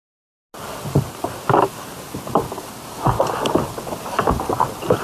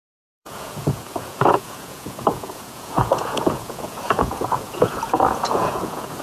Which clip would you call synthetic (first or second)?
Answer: second